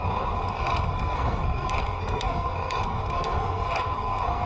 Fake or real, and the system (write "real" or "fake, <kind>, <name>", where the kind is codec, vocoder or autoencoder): fake, codec, SNAC